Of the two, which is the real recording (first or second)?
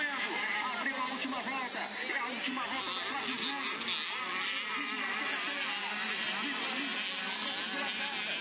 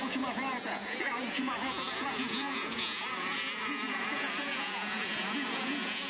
first